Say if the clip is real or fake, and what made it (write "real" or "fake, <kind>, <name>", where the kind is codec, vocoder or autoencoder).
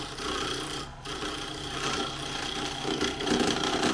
fake, vocoder, BigVGAN v2